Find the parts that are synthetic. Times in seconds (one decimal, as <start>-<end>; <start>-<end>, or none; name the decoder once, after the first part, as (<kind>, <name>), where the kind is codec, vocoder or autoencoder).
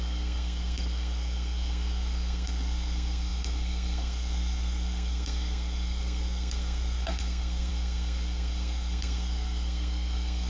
0.0-10.5 (codec, SNAC)